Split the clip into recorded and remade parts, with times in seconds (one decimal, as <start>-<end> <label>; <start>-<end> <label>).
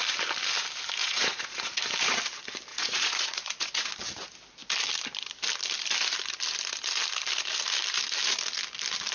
0.0-1.0 recorded; 1.0-1.9 remade; 1.9-2.7 recorded; 2.7-3.9 remade; 3.9-9.1 recorded